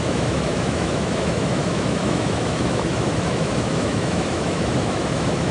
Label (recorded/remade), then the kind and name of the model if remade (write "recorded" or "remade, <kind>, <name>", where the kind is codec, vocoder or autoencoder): remade, autoencoder, DAC-VAE